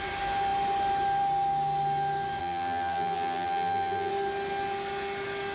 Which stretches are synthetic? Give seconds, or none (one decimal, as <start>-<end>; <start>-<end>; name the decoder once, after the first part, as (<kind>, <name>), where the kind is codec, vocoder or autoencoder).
2.4-4.1 (vocoder, BigVGAN v2)